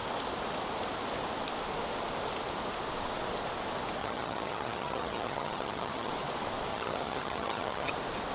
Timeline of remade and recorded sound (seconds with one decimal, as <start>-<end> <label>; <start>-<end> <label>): 0.0-4.0 recorded; 4.0-6.1 remade; 6.1-6.7 recorded; 6.7-7.9 remade; 7.9-8.3 recorded